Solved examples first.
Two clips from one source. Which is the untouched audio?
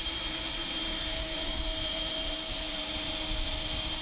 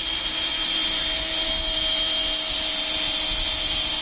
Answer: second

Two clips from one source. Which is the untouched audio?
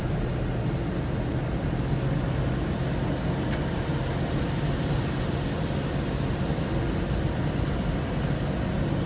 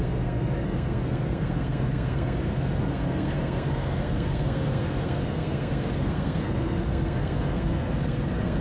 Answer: first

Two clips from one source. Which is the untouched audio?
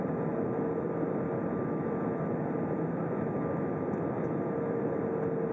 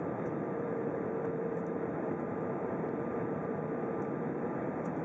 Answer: first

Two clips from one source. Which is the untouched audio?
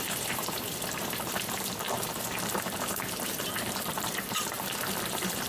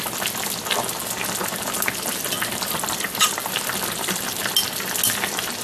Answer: second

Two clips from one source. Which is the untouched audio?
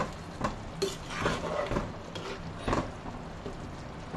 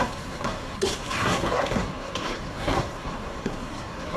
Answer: first